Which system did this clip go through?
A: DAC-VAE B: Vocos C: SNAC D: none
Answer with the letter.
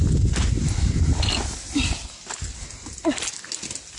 D